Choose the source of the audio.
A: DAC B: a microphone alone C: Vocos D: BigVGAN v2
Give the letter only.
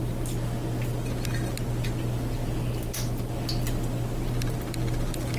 B